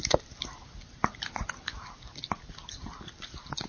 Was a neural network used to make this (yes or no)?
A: no